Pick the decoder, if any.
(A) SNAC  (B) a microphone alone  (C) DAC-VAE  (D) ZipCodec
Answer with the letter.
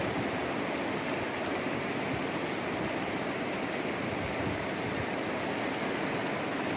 B